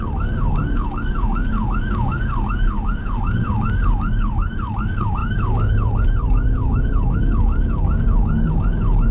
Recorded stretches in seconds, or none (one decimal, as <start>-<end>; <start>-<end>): none